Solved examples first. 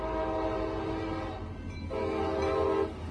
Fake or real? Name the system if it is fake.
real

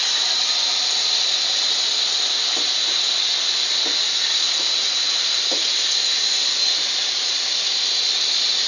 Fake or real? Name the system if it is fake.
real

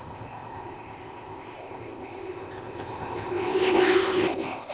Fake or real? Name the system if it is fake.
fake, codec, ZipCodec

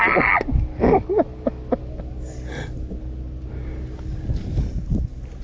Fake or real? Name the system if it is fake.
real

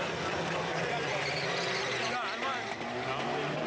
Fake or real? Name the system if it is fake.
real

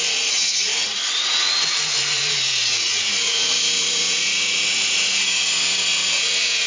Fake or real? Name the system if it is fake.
fake, vocoder, Vocos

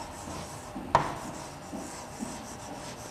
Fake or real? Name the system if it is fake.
real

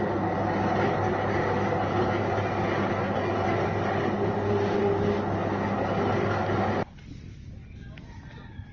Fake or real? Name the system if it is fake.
real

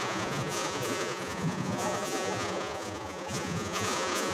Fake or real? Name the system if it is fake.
fake, vocoder, Vocos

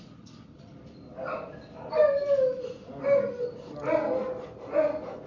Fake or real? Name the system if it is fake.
real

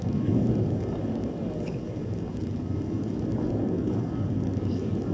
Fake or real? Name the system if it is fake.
fake, codec, DAC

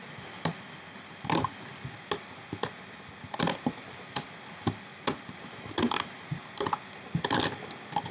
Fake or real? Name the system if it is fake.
real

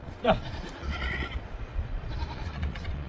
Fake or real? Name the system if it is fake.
fake, vocoder, Vocos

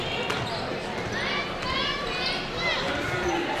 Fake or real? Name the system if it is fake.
real